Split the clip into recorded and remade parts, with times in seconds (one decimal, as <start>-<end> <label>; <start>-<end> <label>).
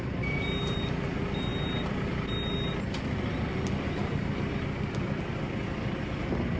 0.0-6.6 recorded